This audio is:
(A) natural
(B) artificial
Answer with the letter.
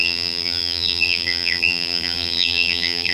B